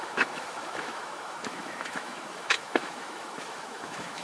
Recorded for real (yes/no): no